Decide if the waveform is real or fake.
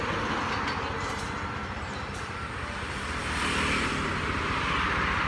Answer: real